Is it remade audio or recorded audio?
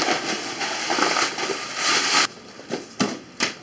recorded